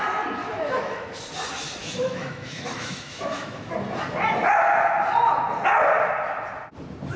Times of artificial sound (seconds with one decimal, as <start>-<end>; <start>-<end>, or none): 0.4-1.2; 1.8-3.7